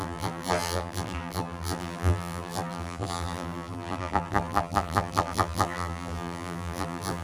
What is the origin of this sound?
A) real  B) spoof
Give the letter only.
B